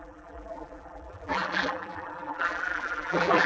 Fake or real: fake